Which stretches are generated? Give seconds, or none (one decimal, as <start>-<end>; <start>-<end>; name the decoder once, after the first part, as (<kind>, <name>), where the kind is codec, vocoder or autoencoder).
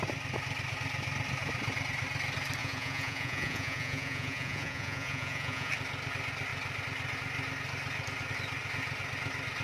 2.6-5.7 (vocoder, Vocos)